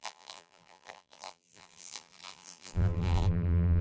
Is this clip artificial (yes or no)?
yes